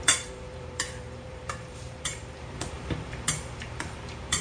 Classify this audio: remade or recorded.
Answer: remade